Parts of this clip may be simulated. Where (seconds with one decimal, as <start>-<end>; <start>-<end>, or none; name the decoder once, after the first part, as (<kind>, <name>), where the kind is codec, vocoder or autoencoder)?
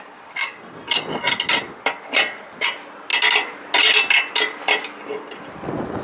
0.4-1.0 (codec, DAC)